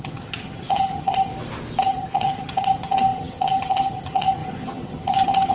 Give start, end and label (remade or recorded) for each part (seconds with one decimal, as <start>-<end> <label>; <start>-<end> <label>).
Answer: 0.0-1.3 remade; 1.3-1.8 recorded; 1.8-5.5 remade